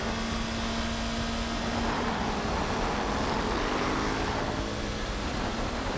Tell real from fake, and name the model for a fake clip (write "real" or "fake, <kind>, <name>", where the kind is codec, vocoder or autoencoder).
real